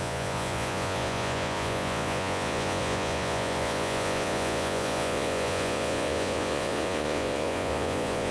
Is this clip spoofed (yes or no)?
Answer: yes